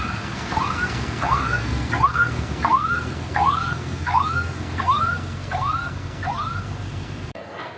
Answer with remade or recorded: remade